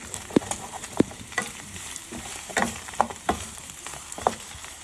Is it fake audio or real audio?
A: fake